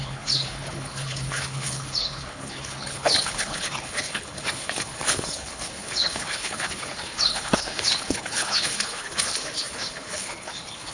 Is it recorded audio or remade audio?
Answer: remade